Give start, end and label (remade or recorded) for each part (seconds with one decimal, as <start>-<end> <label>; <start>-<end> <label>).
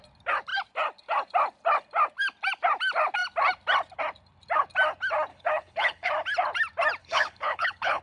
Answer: 0.0-5.3 recorded; 5.3-6.1 remade; 6.1-7.0 recorded; 7.0-8.0 remade